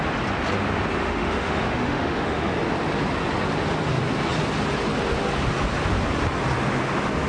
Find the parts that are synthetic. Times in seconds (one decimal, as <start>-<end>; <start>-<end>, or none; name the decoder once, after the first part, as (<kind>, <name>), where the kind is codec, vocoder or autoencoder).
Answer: 1.0-2.5 (autoencoder, DAC-VAE)

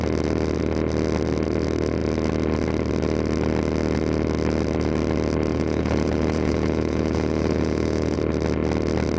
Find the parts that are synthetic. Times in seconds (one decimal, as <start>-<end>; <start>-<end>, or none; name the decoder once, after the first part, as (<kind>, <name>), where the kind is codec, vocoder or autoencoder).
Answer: 5.5-8.2 (vocoder, Vocos)

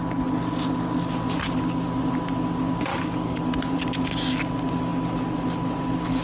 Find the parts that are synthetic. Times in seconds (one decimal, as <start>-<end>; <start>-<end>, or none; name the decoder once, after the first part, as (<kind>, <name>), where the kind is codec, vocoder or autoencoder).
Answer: 2.9-3.4 (codec, DAC)